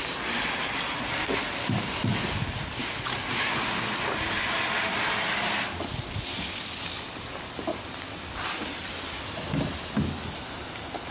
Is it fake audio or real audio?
real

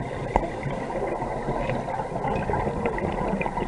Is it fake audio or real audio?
real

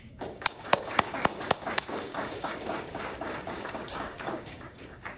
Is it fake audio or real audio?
fake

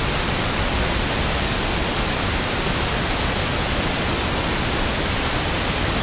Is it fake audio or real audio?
real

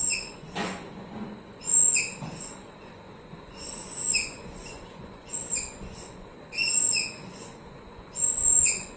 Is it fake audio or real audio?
fake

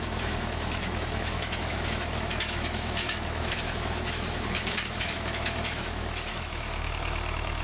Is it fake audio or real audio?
fake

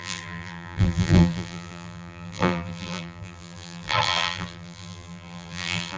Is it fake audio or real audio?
fake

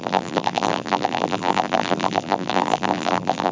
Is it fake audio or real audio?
fake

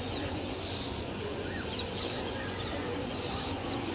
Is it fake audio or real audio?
fake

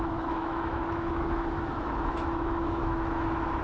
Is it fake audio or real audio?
fake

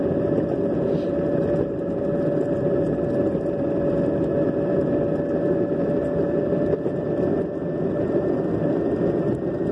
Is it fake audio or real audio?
real